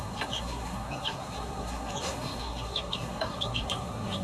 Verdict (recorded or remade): remade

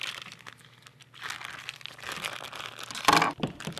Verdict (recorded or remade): recorded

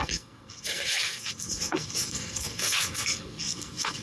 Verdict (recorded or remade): remade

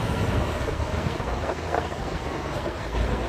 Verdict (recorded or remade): remade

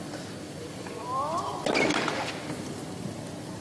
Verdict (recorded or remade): recorded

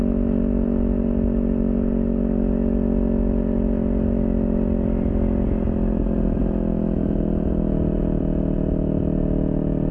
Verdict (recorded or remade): recorded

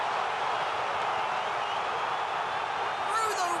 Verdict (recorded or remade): recorded